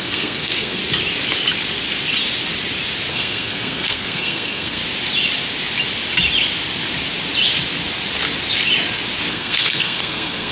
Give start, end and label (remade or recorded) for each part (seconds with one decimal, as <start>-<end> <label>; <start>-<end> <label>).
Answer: 0.0-0.8 remade; 0.8-3.1 recorded; 3.1-4.8 remade; 4.8-9.3 recorded; 9.3-10.5 remade